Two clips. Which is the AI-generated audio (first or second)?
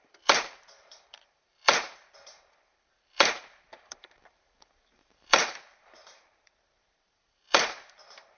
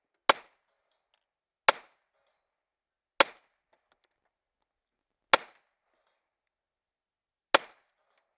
first